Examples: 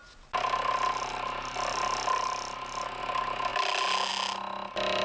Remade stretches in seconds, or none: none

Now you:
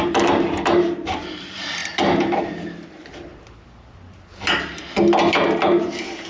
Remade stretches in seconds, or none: 0.0-3.3 (vocoder, BigVGAN v2); 5.3-6.3

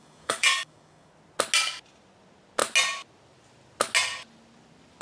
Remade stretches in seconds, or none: 0.0-1.1 (codec, DAC)

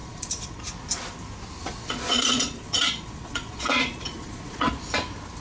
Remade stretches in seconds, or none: 0.0-0.6 (vocoder, Vocos); 1.6-4.7